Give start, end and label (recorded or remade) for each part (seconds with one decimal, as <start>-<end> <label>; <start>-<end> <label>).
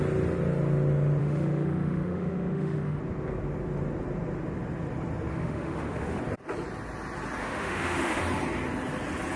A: 0.0-1.2 recorded; 1.2-3.0 remade; 3.0-5.3 recorded; 5.3-6.2 remade; 6.2-7.4 recorded; 7.4-8.2 remade; 8.2-9.4 recorded